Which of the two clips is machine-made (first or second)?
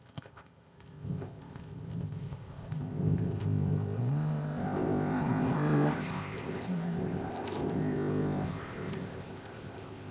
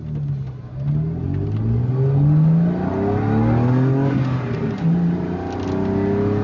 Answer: first